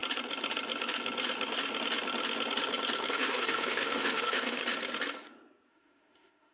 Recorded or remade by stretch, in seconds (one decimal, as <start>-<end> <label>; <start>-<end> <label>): 0.0-3.1 recorded; 3.1-4.6 remade; 4.6-5.7 recorded; 5.7-6.5 remade